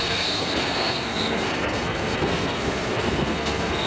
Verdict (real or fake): fake